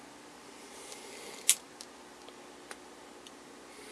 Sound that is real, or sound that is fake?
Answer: real